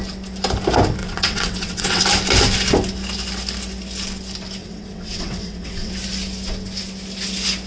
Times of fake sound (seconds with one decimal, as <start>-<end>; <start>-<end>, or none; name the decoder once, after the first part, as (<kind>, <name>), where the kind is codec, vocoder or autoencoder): 1.0-2.0 (vocoder, WaveNeXt); 4.6-5.9

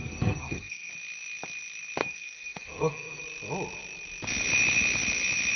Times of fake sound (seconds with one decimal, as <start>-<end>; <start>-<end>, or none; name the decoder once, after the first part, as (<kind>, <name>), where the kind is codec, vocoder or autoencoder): 0.0-0.9 (codec, SNAC); 2.0-3.2

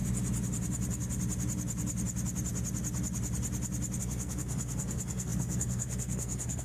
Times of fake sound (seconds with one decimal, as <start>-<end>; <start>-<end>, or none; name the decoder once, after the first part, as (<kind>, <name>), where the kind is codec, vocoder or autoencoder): 4.0-6.6 (codec, SNAC)

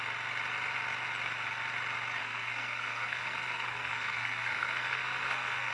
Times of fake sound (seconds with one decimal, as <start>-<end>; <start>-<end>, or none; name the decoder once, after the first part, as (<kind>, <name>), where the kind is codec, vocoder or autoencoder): 2.2-5.7 (codec, SNAC)

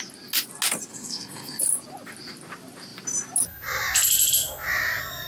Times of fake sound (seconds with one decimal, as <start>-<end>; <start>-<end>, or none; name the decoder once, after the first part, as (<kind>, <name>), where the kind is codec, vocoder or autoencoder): 0.9-1.6 (codec, SNAC)

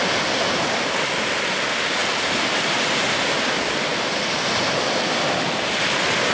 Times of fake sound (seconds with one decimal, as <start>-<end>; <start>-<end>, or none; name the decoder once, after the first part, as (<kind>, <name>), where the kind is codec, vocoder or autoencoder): none

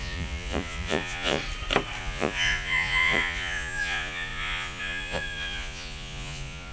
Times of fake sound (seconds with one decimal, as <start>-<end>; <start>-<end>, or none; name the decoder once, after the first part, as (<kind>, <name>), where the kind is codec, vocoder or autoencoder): 0.0-1.4 (vocoder, Vocos); 2.0-6.7

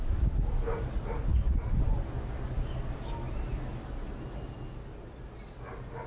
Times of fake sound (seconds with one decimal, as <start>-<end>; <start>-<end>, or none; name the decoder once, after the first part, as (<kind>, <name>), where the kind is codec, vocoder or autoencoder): none